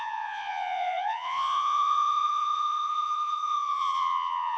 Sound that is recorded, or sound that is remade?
remade